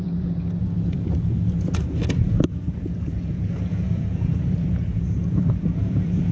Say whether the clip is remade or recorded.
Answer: remade